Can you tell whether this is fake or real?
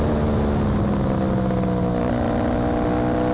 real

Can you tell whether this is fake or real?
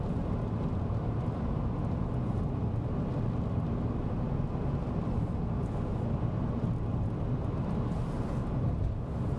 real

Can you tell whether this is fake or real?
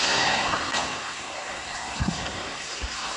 fake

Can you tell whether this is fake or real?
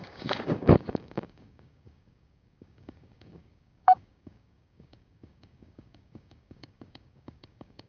fake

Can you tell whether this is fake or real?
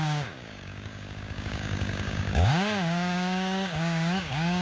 fake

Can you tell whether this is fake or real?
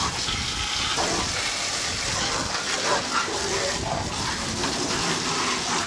real